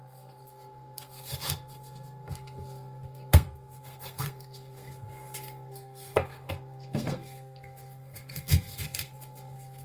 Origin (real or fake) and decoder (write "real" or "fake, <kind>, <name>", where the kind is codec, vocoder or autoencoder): fake, codec, SNAC